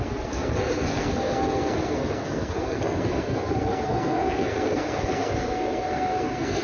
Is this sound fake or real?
fake